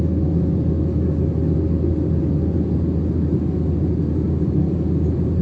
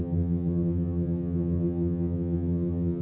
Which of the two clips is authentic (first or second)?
first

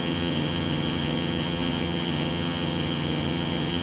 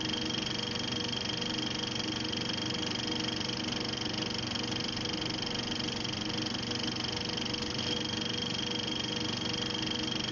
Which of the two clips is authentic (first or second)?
second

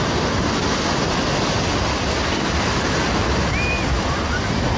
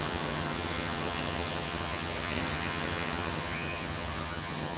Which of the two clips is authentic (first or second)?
first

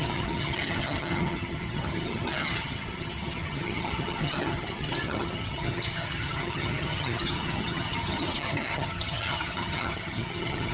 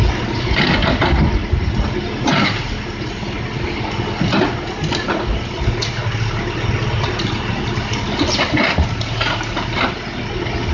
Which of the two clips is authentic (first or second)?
second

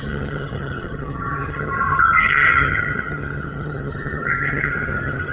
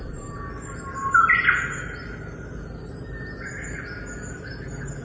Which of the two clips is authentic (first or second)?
second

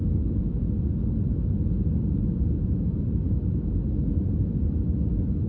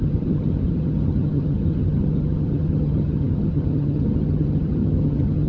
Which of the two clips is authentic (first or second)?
first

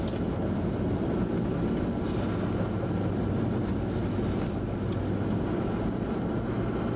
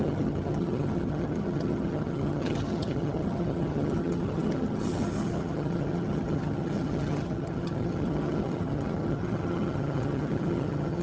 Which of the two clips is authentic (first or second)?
first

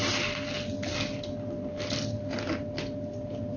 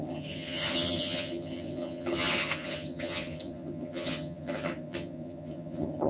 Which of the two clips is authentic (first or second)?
first